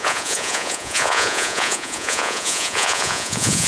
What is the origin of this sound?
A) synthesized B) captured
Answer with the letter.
A